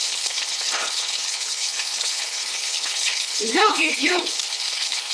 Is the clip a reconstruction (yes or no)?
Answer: yes